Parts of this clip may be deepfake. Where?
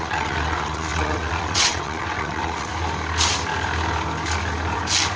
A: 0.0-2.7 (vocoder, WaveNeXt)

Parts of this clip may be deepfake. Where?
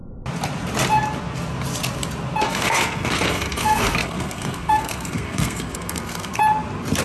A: 2.4-6.4 (codec, SNAC)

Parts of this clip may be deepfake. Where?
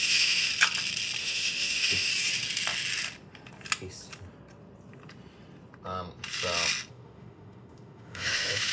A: 0.0-0.5 (autoencoder, DAC-VAE); 1.2-2.1; 6.9-8.7